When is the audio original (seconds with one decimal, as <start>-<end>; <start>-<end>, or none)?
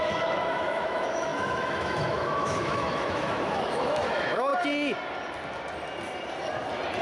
4.5-7.0